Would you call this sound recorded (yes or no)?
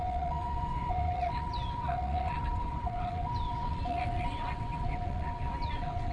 no